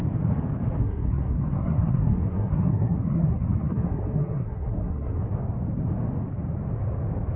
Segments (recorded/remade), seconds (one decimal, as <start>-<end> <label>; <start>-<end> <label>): 0.0-0.8 recorded; 0.8-5.2 remade; 5.2-7.4 recorded